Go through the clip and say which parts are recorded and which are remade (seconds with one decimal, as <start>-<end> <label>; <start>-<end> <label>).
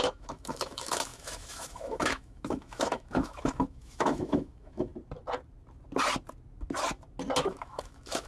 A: 0.0-4.9 remade; 4.9-7.4 recorded; 7.4-8.3 remade